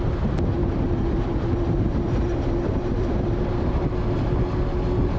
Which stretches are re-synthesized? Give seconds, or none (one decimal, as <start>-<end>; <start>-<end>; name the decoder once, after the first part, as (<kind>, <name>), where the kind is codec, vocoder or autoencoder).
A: 0.6-3.7 (vocoder, BigVGAN v2)